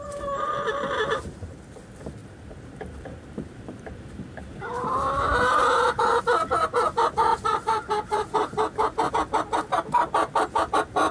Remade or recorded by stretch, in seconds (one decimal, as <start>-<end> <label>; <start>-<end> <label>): 0.0-2.2 recorded; 2.2-6.2 remade; 6.2-7.3 recorded; 7.3-9.1 remade; 9.1-11.1 recorded